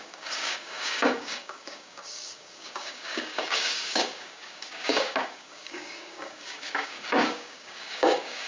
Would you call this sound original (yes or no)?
no